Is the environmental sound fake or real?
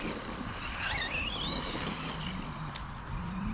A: real